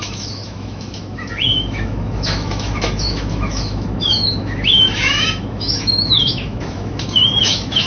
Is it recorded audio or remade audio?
remade